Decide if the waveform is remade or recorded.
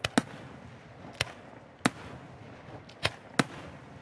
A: recorded